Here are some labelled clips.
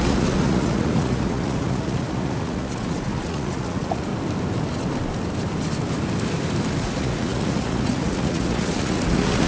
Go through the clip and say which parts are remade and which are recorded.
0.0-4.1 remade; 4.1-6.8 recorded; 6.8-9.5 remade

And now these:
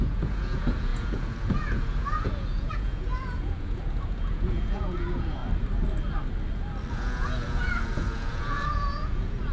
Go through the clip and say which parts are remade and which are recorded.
0.0-5.4 remade; 5.4-6.9 recorded; 6.9-9.5 remade

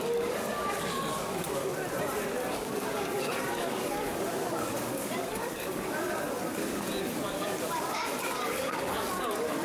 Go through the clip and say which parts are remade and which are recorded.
0.0-1.8 remade; 1.8-2.5 recorded; 2.5-9.6 remade